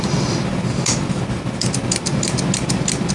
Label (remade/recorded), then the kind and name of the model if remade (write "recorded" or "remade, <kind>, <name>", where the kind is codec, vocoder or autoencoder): recorded